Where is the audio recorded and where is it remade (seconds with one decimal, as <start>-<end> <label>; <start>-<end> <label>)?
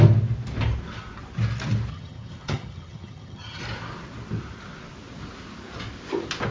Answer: 0.0-1.9 recorded; 1.9-3.6 remade; 3.6-6.5 recorded